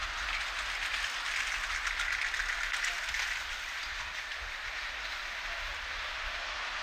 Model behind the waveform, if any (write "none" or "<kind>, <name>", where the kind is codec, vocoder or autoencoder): none